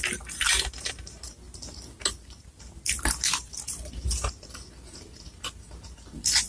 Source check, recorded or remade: recorded